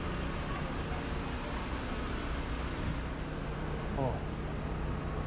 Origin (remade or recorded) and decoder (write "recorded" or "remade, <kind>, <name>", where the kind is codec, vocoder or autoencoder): recorded